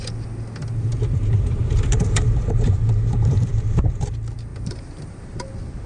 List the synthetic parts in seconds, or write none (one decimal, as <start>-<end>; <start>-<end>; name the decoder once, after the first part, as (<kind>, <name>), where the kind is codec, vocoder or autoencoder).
0.6-4.1 (vocoder, BigVGAN v2); 4.5-5.4